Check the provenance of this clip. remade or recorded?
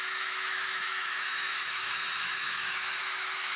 remade